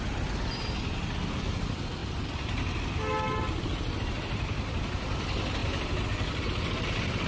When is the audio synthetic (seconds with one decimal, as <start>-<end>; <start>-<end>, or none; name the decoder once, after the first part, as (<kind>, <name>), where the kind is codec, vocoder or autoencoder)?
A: none